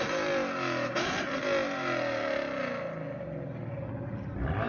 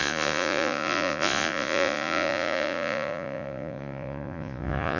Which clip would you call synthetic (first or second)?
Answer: second